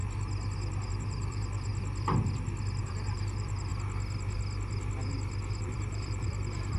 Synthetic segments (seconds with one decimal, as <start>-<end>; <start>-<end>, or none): 0.9-1.7; 2.8-3.7; 5.6-6.8